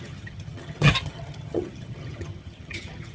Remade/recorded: remade